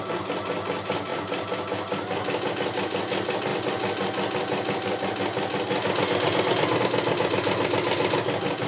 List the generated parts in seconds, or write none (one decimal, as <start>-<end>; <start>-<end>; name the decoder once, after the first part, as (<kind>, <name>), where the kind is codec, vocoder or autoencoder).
none